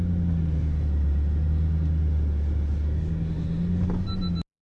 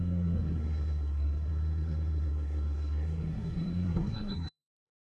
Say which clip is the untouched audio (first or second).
first